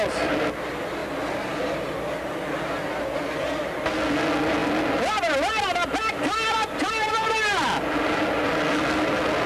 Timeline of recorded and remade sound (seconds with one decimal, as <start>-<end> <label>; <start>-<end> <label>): 0.0-9.5 recorded